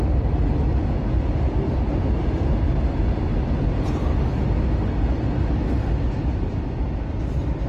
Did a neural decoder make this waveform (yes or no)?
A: no